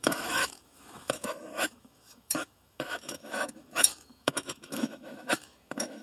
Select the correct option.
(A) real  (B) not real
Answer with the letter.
B